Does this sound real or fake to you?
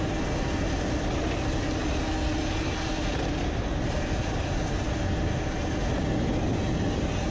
real